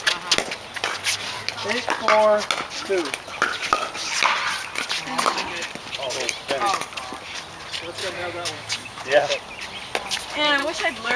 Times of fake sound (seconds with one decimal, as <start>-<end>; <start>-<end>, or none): 8.0-9.0; 10.6-11.2